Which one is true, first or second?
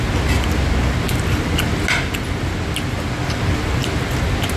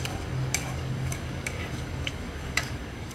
first